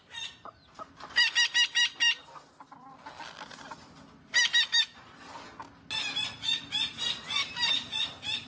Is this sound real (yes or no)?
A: yes